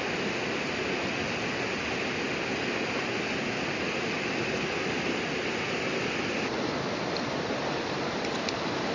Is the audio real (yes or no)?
yes